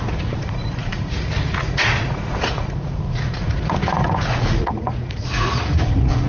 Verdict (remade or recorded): remade